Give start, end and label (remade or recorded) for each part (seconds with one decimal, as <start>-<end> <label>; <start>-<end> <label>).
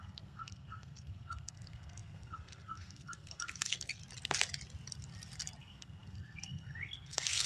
0.0-4.0 remade; 4.0-5.6 recorded; 5.6-7.5 remade